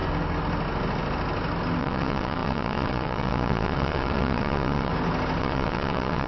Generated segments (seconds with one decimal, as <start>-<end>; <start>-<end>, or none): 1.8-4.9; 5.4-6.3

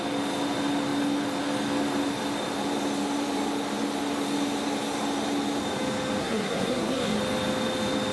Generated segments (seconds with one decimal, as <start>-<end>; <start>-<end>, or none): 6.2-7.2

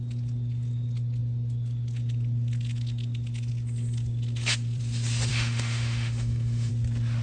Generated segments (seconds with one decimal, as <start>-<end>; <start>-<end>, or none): 5.3-6.7

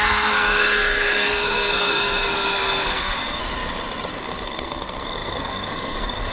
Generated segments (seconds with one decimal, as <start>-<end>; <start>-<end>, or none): 0.0-3.4; 4.1-6.3

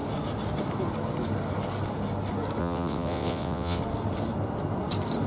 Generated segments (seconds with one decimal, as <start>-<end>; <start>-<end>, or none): 2.6-3.8

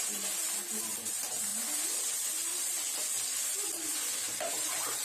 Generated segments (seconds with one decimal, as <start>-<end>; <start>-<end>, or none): 0.0-0.4; 1.1-1.5; 4.5-5.0

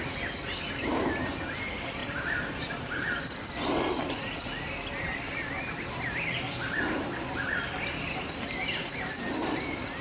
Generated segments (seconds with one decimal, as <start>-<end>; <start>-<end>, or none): none